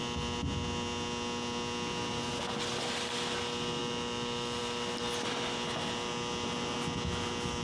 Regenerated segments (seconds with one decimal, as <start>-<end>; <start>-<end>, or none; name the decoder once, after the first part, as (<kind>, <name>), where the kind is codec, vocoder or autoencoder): none